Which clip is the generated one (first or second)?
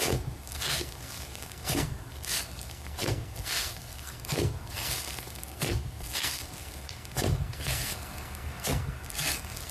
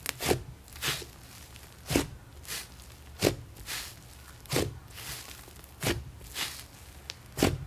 first